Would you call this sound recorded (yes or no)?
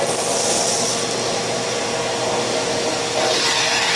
yes